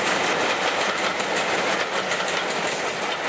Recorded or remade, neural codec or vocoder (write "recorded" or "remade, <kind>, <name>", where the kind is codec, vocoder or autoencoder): recorded